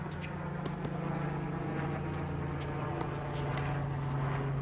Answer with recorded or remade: recorded